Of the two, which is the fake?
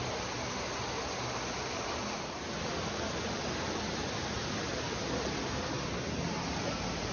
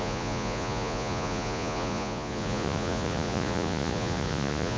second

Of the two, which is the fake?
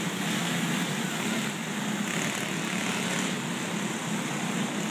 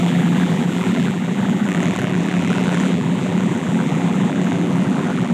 second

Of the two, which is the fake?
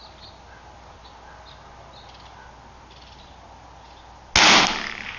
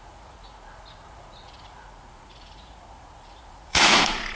second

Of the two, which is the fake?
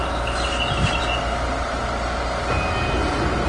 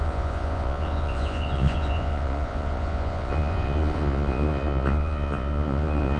second